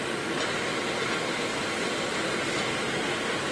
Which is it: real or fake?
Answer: real